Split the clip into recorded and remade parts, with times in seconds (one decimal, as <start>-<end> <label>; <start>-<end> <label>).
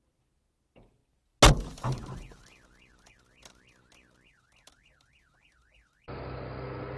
0.0-7.0 recorded